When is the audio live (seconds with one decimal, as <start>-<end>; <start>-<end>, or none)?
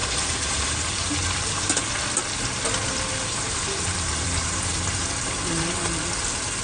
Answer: 1.8-2.8; 6.1-6.6